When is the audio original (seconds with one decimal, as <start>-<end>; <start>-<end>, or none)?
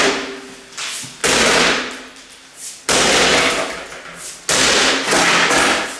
0.0-6.0